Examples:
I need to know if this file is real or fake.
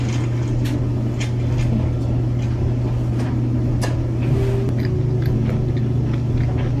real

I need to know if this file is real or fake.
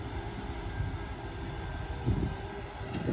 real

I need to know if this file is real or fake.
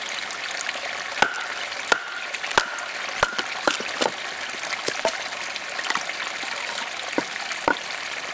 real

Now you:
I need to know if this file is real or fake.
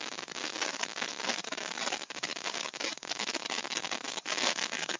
fake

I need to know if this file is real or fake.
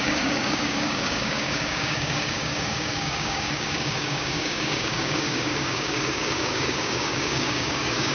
fake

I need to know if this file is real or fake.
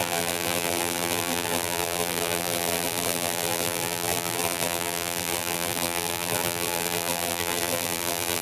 fake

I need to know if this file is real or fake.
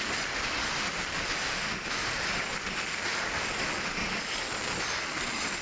real